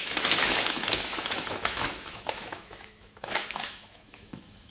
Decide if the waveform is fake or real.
fake